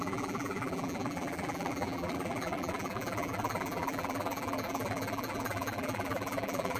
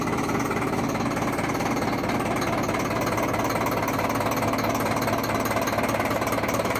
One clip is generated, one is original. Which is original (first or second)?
second